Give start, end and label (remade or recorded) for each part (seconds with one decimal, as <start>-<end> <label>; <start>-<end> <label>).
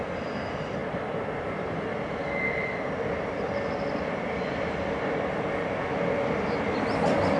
0.0-7.4 recorded